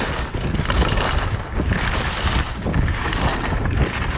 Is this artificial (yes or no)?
no